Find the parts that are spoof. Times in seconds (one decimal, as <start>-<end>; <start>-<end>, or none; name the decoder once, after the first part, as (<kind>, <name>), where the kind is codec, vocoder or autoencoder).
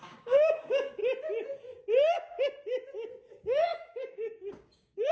0.0-1.0 (codec, DAC); 3.3-5.1